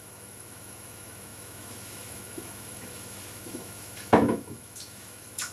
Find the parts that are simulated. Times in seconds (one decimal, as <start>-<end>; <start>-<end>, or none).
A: 0.0-5.5